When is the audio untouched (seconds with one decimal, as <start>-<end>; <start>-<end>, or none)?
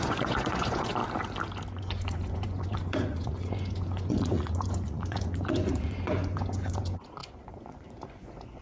1.0-1.7